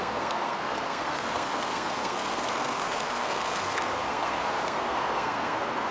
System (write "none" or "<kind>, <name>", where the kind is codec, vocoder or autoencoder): codec, SNAC